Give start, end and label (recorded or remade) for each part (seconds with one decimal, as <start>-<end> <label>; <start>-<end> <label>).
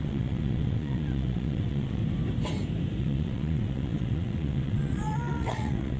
0.0-2.0 remade; 2.0-3.0 recorded; 3.0-6.0 remade